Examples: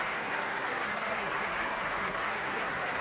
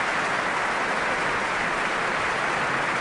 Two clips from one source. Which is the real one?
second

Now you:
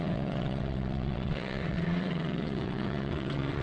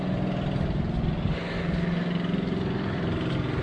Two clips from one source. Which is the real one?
second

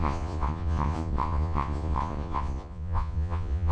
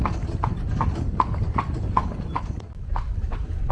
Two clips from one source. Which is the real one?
second